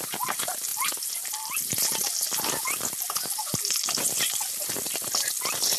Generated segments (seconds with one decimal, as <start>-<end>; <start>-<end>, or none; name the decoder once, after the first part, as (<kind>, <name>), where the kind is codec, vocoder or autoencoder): none